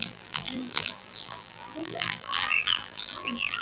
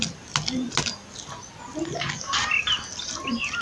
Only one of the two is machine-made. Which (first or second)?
first